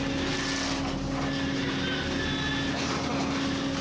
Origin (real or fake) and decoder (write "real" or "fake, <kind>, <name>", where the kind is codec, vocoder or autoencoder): real